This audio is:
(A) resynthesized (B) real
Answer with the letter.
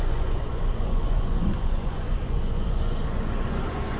A